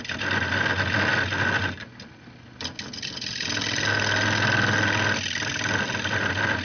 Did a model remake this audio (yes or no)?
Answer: no